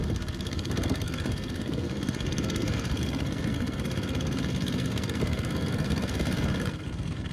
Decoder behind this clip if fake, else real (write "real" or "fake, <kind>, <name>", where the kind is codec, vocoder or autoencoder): fake, codec, SNAC